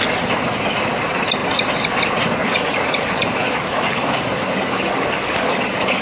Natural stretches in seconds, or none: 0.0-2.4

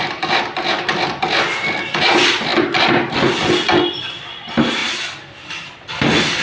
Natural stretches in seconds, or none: 0.0-2.5; 3.1-6.4

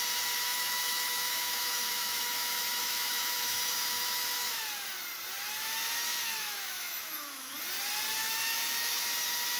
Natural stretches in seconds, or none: 0.0-0.5; 4.6-6.1; 7.5-8.2; 9.0-9.6

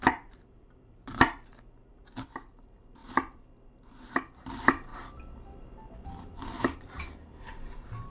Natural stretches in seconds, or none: 3.0-4.4; 4.9-6.2

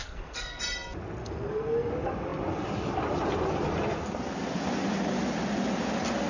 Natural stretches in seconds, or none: 0.6-1.2; 1.9-6.3

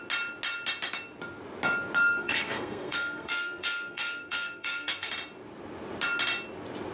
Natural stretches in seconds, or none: 0.0-2.2; 5.1-6.9

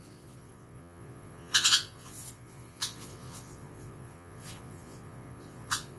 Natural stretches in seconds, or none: none